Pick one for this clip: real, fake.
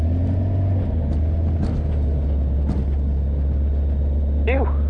real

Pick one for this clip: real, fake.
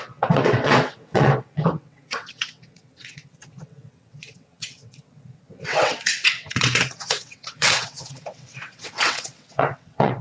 fake